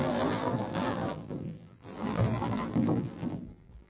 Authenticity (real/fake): fake